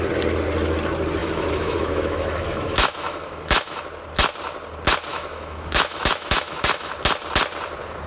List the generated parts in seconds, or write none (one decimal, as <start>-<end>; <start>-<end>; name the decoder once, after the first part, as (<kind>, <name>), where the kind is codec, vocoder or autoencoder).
1.2-3.8 (autoencoder, DAC-VAE); 5.1-6.9